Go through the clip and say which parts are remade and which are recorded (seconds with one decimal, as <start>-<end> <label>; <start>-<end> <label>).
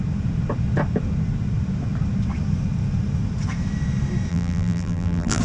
0.0-4.3 recorded; 4.3-5.4 remade